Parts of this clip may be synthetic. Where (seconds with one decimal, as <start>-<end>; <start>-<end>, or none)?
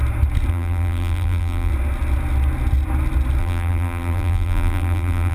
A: 0.5-1.7; 3.4-5.3